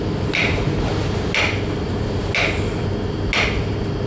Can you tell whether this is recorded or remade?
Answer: recorded